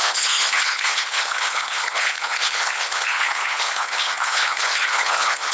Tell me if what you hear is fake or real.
fake